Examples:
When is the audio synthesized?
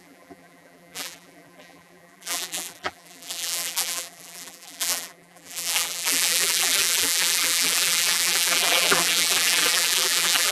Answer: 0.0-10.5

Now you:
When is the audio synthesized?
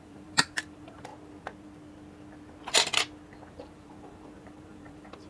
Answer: 0.0-1.1; 3.5-5.3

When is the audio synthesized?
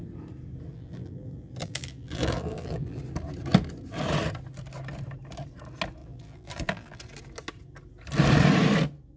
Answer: 0.7-3.0; 6.0-7.0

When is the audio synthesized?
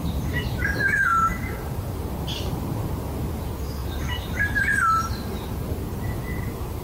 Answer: 1.1-2.4; 3.8-5.1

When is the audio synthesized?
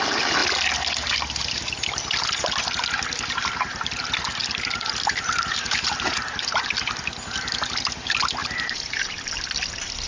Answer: 4.4-7.0; 8.4-9.2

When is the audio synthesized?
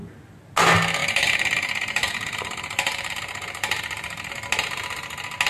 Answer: 1.0-4.3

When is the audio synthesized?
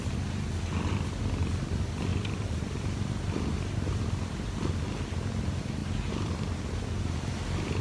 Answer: 2.1-3.1; 5.8-6.6